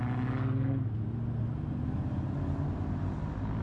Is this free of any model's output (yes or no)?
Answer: yes